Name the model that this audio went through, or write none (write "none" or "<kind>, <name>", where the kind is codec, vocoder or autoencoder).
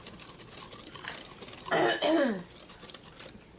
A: none